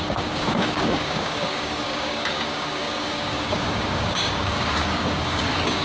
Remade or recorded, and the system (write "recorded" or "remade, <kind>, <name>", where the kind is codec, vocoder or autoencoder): remade, codec, DAC